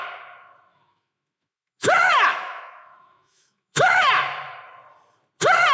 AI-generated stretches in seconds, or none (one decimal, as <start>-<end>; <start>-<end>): 0.7-4.1

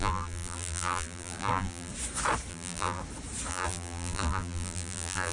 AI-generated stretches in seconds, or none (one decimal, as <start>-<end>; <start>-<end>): 0.0-1.9; 2.5-3.0; 3.5-5.3

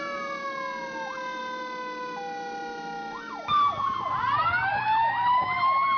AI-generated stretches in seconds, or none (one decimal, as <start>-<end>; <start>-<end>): none

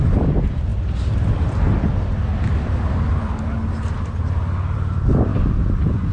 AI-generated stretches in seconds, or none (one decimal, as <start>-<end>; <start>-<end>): 0.0-5.3